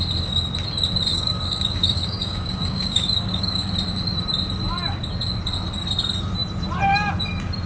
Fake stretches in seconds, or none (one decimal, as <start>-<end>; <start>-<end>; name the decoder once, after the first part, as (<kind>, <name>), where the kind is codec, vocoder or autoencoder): 1.1-3.7 (codec, DAC)